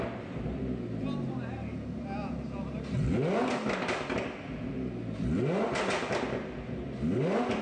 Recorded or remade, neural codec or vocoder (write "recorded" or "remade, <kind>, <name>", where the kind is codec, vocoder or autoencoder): recorded